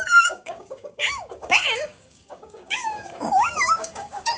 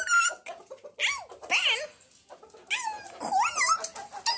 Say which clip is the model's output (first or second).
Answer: first